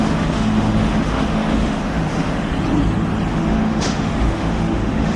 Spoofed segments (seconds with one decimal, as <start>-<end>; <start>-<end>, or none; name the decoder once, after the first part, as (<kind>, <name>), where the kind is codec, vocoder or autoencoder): 0.0-2.5 (autoencoder, DAC-VAE); 3.3-5.2